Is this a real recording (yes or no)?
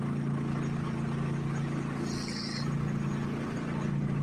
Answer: yes